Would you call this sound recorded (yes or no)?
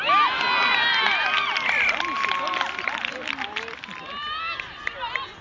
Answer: yes